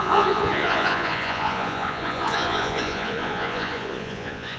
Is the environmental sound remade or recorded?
remade